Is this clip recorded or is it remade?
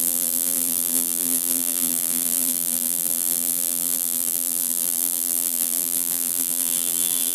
remade